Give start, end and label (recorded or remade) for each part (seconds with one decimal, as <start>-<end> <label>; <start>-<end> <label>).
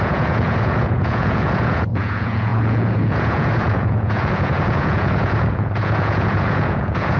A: 0.0-7.2 remade